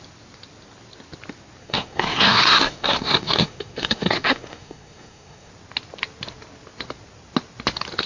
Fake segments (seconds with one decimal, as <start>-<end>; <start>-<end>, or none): 1.6-5.5